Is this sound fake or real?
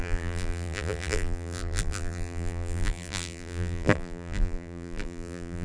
fake